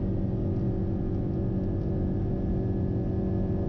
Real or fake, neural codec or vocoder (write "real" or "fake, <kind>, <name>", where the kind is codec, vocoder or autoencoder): real